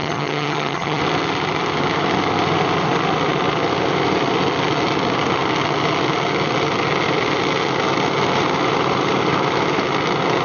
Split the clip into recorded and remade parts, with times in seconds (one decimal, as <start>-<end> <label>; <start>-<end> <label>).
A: 0.0-1.0 remade; 1.0-10.4 recorded